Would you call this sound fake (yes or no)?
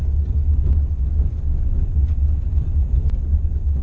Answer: no